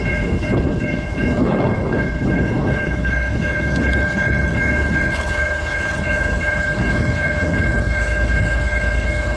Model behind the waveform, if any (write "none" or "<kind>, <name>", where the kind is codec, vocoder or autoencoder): codec, HILCodec